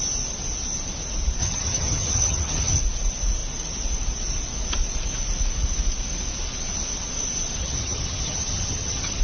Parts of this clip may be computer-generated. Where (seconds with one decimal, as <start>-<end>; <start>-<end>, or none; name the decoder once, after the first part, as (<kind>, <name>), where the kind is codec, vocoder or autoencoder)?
1.4-2.8 (vocoder, HiFi-GAN); 7.6-9.2